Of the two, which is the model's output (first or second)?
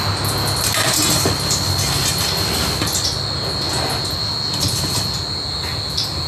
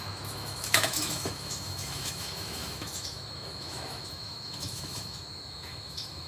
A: second